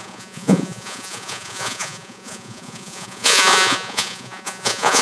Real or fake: fake